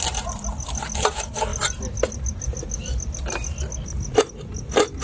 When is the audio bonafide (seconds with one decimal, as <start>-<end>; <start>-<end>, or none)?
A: 0.0-5.0